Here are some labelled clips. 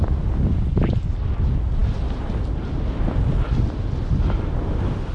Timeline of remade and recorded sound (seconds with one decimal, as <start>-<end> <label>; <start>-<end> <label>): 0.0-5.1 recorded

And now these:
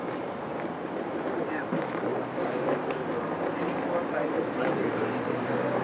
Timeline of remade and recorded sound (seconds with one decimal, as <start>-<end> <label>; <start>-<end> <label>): 0.0-5.8 remade

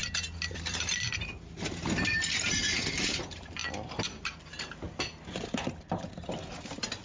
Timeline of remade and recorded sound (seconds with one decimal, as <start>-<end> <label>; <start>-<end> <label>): 0.0-0.5 recorded; 0.5-3.6 remade; 3.6-7.0 recorded